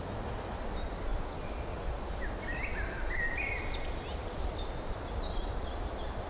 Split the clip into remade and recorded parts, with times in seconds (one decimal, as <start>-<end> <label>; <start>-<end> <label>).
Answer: 0.0-6.3 recorded